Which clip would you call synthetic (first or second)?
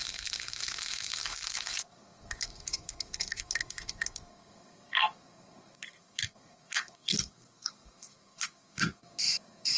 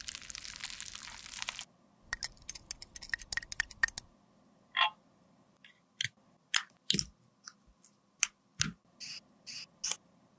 first